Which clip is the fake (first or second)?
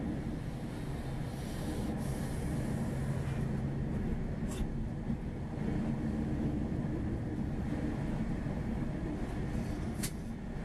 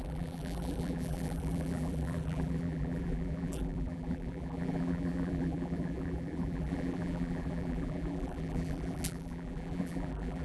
second